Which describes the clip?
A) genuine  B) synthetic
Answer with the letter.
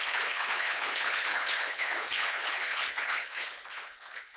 B